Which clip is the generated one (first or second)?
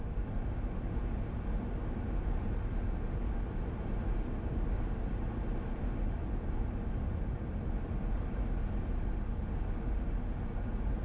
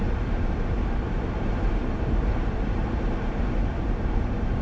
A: second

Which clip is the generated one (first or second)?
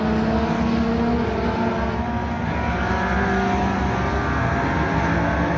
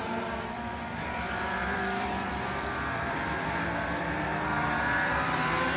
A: second